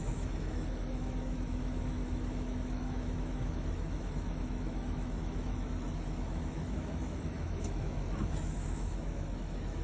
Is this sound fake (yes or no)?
yes